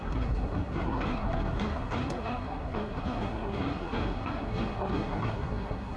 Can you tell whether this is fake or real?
fake